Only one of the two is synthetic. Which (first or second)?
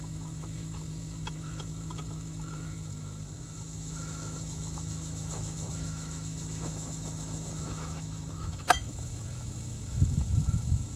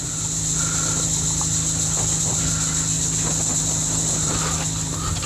first